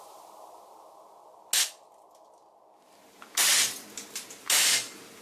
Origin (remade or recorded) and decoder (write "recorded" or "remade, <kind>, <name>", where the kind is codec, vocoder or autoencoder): recorded